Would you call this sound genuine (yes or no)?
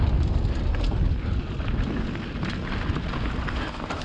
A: yes